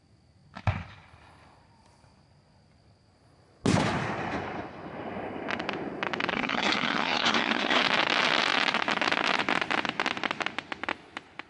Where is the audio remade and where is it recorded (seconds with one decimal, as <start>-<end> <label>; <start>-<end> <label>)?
0.0-6.3 recorded; 6.3-7.8 remade; 7.8-11.5 recorded